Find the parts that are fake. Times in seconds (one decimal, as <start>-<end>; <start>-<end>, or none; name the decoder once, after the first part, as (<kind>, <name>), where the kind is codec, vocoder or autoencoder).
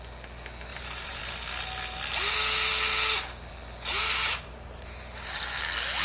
0.7-1.2 (vocoder, BigVGAN v2); 3.9-5.6